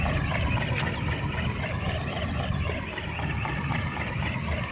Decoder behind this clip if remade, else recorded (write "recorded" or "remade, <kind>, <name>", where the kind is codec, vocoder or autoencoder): recorded